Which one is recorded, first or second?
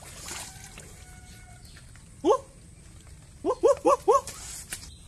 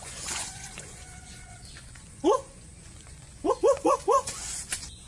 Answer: first